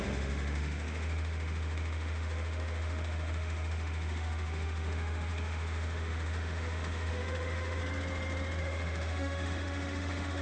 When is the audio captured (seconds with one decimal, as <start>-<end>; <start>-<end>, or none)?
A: 7.8-8.6